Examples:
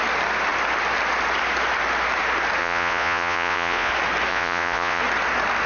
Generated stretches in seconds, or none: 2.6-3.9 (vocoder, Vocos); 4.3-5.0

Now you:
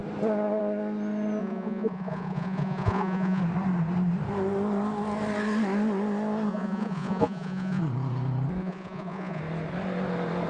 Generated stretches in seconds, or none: 1.4-3.4 (vocoder, Vocos); 6.5-7.8; 8.6-9.4

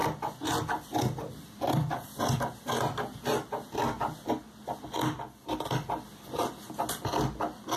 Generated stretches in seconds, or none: 0.0-2.4 (vocoder, BigVGAN v2)

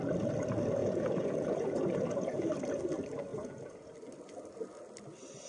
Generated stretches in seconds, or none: 0.8-2.5 (vocoder, Vocos); 3.3-3.9